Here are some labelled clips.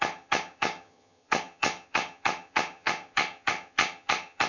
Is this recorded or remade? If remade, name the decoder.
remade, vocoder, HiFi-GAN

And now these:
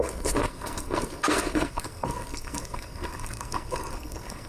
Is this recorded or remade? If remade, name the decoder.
remade, codec, SNAC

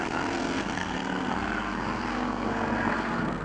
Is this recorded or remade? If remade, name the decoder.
remade, codec, SNAC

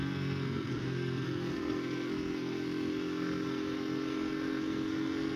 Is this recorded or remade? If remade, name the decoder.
remade, codec, SNAC